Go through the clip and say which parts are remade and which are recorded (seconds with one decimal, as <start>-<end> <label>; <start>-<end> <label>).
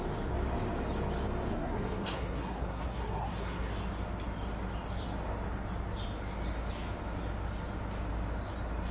0.0-1.5 recorded; 1.5-3.7 remade; 3.7-8.9 recorded